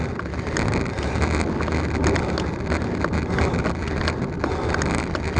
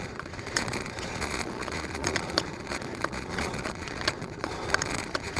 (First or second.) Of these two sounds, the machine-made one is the second